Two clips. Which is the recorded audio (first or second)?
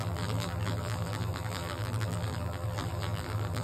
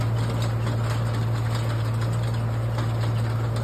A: second